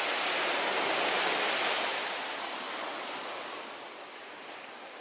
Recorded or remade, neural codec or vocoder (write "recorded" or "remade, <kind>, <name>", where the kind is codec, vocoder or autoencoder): recorded